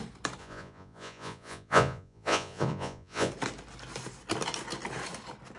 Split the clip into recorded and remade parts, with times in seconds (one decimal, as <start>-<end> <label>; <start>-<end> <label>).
0.0-0.4 recorded; 0.4-3.3 remade; 3.3-5.6 recorded